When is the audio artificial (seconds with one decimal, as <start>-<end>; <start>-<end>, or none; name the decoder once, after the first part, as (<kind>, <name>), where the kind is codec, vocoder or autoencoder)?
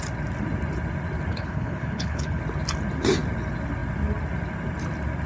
1.3-2.4 (codec, HILCodec)